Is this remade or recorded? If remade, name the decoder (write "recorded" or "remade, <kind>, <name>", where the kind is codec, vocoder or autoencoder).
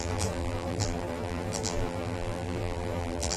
remade, vocoder, BigVGAN v2